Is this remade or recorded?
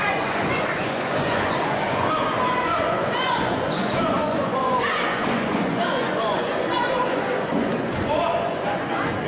remade